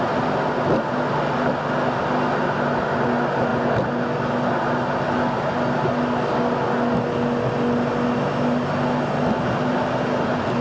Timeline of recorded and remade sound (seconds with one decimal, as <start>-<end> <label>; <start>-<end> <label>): 0.0-10.6 recorded